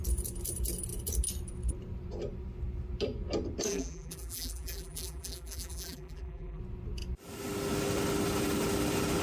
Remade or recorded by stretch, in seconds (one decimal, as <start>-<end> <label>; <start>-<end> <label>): 0.0-3.7 recorded; 3.7-6.6 remade; 6.6-9.2 recorded